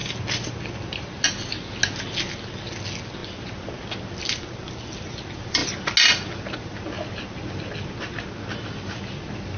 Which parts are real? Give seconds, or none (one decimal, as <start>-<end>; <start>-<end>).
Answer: 0.0-9.6